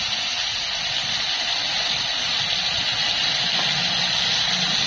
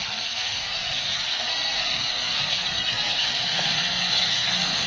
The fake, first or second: second